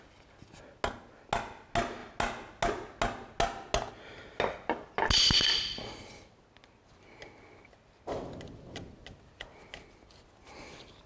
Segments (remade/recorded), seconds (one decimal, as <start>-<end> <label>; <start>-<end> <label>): 0.0-11.1 recorded